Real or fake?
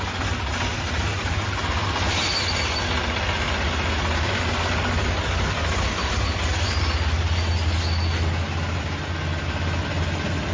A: real